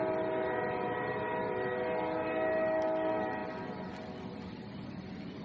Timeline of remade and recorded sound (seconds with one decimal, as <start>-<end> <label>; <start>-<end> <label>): 0.0-5.4 recorded